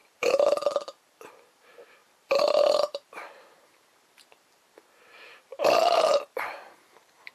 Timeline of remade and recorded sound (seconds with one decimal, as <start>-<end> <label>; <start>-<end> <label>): 0.0-7.3 remade